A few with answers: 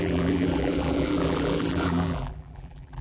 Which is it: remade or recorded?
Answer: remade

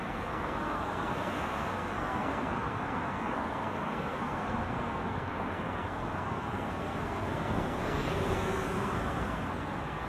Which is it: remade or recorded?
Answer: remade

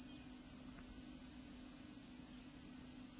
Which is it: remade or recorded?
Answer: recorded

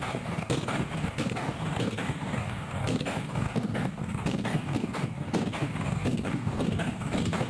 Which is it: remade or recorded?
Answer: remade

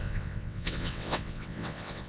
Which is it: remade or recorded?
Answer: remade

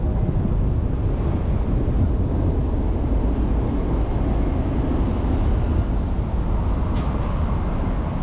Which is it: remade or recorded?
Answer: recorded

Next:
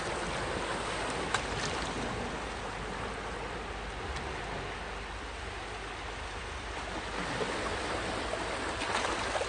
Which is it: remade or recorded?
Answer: recorded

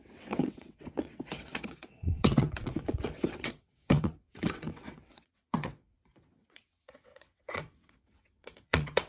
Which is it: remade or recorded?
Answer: remade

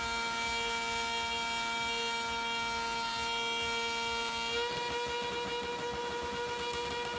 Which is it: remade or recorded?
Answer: recorded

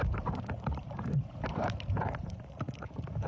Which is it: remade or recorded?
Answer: remade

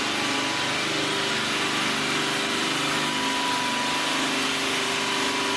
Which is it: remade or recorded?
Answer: recorded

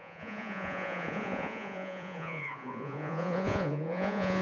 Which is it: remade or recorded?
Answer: remade